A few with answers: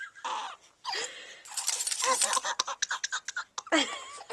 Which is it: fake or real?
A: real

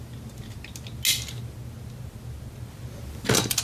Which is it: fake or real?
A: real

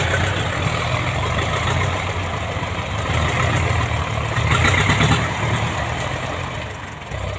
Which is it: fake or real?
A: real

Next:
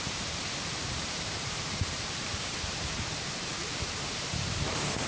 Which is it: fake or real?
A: fake